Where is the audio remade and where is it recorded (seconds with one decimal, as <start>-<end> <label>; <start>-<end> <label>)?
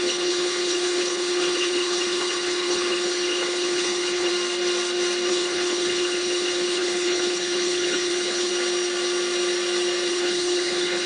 0.0-4.3 remade; 4.3-5.3 recorded; 5.3-8.5 remade; 8.5-10.1 recorded; 10.1-11.1 remade